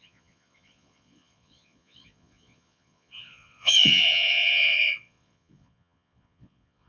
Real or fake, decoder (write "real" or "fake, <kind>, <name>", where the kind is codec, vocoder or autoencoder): fake, vocoder, Vocos